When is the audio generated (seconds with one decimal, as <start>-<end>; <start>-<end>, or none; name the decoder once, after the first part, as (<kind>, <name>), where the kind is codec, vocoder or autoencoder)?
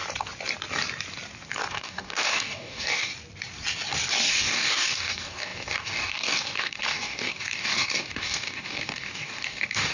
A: 1.7-3.1 (codec, DAC); 4.3-9.9